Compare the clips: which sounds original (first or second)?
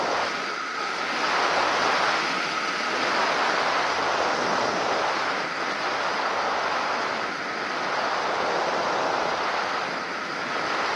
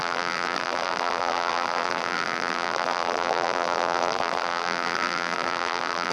first